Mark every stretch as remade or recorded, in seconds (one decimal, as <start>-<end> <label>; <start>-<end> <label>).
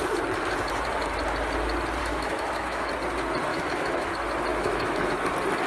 0.0-2.0 recorded; 2.0-2.9 remade; 2.9-3.5 recorded; 3.5-4.1 remade; 4.1-4.5 recorded; 4.5-5.1 remade; 5.1-5.7 recorded